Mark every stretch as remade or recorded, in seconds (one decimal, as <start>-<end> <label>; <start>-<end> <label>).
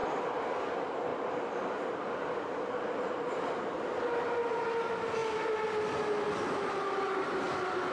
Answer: 0.0-7.9 recorded